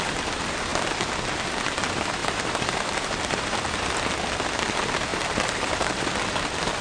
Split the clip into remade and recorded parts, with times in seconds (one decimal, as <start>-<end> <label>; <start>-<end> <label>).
0.0-2.2 recorded; 2.2-3.7 remade; 3.7-5.1 recorded; 5.1-6.1 remade; 6.1-6.8 recorded